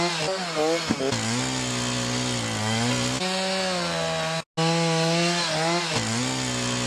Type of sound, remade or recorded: recorded